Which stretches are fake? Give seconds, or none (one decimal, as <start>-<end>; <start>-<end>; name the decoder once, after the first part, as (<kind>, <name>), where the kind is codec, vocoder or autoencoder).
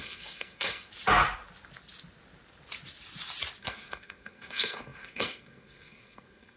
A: 0.0-0.9 (codec, SNAC); 3.6-6.6